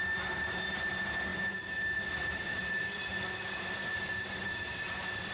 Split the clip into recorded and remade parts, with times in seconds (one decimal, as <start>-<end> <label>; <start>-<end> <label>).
0.0-5.3 recorded